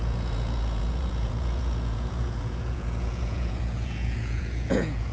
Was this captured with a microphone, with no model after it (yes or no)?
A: no